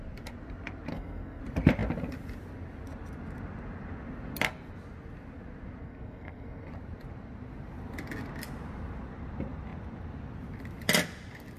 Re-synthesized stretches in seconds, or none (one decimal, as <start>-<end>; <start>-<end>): 0.9-1.4; 5.8-6.7